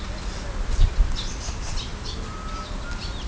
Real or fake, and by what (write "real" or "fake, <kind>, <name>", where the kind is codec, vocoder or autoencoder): real